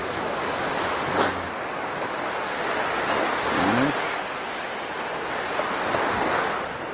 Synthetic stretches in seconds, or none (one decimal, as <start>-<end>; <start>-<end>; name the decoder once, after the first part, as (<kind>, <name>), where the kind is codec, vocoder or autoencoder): none